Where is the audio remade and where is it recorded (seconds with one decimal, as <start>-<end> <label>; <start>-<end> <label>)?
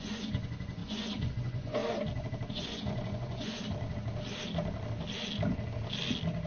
0.0-1.8 remade; 1.8-2.5 recorded; 2.5-3.6 remade; 3.6-6.5 recorded